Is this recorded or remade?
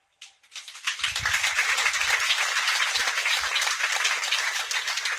remade